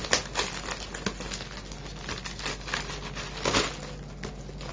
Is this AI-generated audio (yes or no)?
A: no